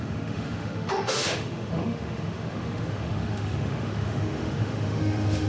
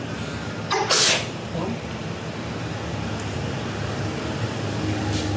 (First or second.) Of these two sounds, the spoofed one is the first